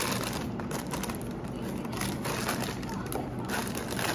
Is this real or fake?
real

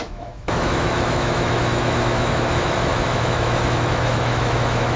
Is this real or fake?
fake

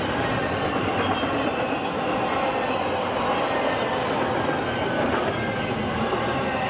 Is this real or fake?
real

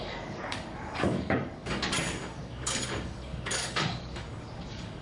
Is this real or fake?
fake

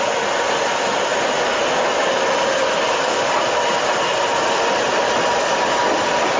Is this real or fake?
real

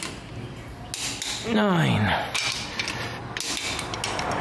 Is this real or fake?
real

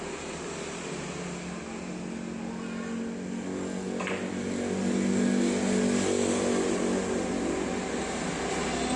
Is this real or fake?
real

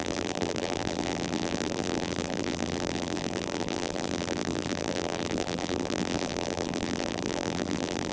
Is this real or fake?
fake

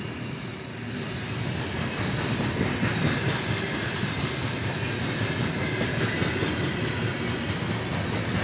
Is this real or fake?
real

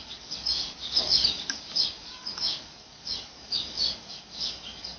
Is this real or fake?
fake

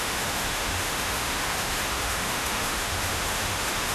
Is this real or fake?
fake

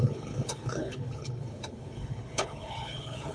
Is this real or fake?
fake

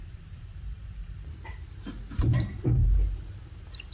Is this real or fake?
fake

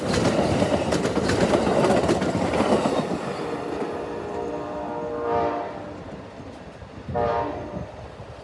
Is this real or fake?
real